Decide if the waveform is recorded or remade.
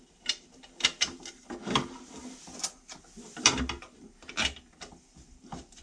recorded